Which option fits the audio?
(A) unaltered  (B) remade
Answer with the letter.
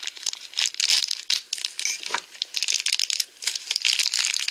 A